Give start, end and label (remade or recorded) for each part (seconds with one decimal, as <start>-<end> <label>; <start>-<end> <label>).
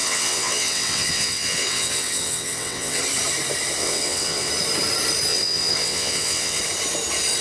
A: 0.0-3.0 remade; 3.0-3.8 recorded; 3.8-4.5 remade; 4.5-5.3 recorded; 5.3-6.6 remade; 6.6-7.4 recorded